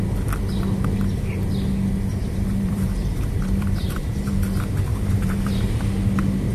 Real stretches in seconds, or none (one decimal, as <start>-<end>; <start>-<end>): 0.0-2.2; 4.3-4.9; 5.5-6.5